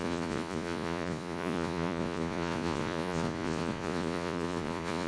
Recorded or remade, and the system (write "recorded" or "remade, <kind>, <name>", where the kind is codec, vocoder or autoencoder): remade, vocoder, Vocos